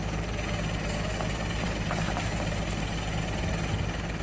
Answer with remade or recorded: recorded